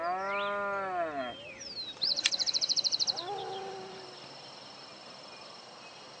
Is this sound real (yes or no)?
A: yes